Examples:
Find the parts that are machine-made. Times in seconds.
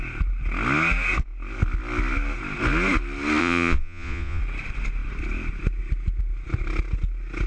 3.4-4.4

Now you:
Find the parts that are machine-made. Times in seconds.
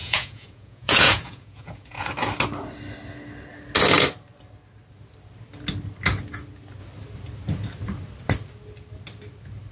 0.0-2.1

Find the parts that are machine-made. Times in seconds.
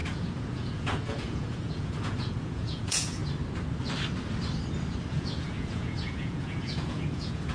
0.0-3.2; 5.1-7.5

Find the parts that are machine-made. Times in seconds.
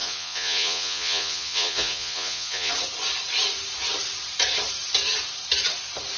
0.0-2.7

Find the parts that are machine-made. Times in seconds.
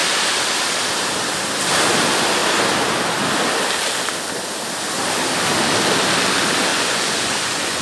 6.7-7.8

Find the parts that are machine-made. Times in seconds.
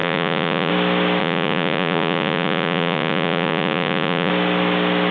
0.0-0.7; 1.2-4.3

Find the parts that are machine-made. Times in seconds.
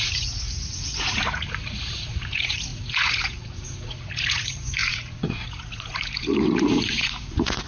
0.0-7.7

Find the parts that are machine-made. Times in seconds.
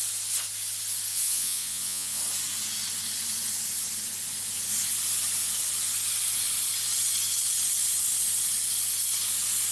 1.1-2.2